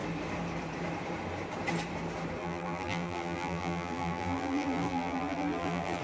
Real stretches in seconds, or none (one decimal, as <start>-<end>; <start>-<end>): 0.0-2.4